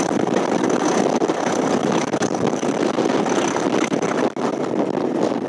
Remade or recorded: recorded